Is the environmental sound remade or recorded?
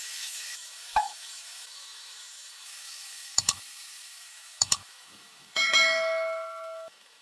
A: remade